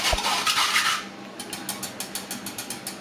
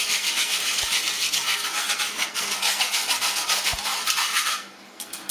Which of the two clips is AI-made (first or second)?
second